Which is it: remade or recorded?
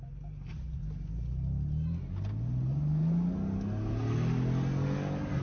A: recorded